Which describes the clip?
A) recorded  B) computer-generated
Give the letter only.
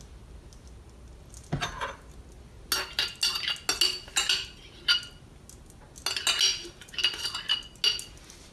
A